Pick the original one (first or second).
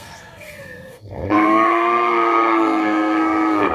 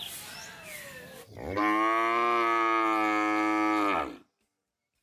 second